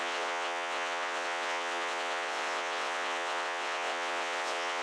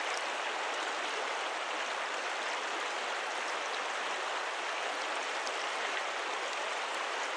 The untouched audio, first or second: second